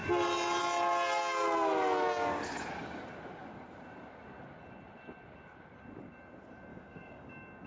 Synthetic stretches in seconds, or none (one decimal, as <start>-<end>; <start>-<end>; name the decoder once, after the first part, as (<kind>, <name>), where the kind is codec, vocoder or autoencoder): 6.7-7.3 (codec, DAC)